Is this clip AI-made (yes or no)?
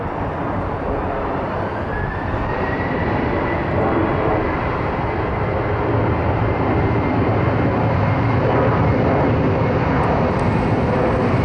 no